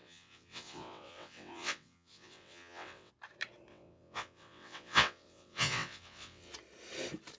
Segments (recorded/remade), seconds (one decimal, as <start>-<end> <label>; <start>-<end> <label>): 0.0-3.1 remade; 3.1-3.7 recorded; 3.7-6.5 remade; 6.5-7.4 recorded

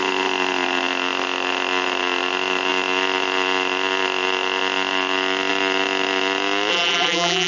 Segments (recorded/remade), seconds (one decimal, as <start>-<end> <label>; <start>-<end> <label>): 0.0-6.7 recorded; 6.7-7.5 remade

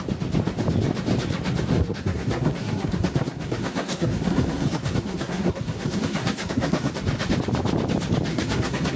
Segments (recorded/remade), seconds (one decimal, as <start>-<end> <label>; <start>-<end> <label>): 0.0-1.7 recorded; 1.7-6.9 remade; 6.9-8.3 recorded; 8.3-9.0 remade

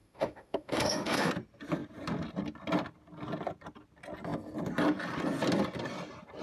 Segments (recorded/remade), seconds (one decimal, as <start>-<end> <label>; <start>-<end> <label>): 0.0-1.3 remade; 1.3-6.4 recorded